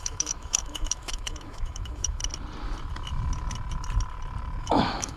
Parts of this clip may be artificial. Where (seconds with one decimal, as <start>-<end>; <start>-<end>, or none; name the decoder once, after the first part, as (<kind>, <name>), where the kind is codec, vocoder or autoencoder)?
0.0-2.2 (autoencoder, DAC-VAE); 4.6-5.2